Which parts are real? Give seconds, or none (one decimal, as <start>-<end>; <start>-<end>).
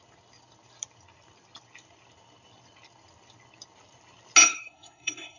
0.0-4.4